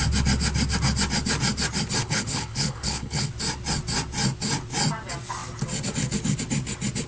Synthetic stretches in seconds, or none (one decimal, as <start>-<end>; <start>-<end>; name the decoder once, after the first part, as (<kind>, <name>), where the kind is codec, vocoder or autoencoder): 2.0-3.3 (codec, HILCodec)